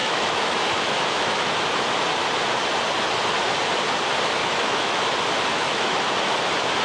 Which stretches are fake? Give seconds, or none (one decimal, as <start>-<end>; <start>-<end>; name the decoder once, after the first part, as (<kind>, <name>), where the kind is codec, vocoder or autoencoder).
0.0-1.5 (autoencoder, DAC-VAE); 4.4-5.0; 5.5-6.0